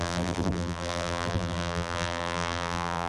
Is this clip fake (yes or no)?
yes